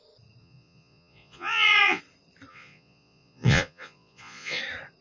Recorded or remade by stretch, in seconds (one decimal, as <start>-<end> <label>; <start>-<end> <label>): 0.0-0.4 recorded; 0.4-2.0 remade; 2.0-2.5 recorded; 2.5-4.6 remade; 4.6-5.0 recorded